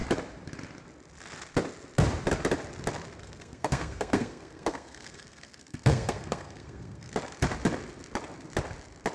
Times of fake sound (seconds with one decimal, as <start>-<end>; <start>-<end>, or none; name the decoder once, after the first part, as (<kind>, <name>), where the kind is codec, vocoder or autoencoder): 3.2-7.1 (codec, SNAC)